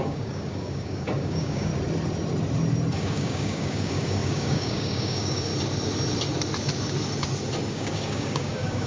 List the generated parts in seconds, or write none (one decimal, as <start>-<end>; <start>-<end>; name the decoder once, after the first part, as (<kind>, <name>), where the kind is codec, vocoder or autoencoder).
0.0-1.7 (codec, DAC); 3.0-5.5; 7.7-8.9